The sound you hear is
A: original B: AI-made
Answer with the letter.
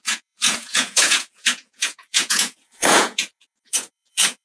B